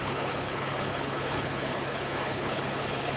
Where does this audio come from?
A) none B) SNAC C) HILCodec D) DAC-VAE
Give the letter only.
C